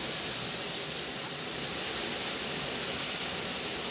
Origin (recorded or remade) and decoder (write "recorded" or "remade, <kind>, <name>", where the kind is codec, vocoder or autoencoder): recorded